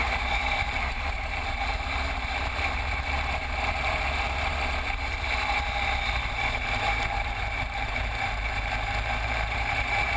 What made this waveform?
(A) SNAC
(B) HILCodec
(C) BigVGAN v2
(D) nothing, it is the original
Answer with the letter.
C